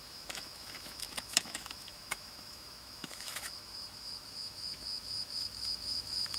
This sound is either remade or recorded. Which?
remade